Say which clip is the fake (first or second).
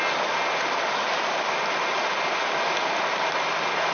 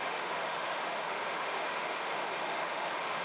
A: second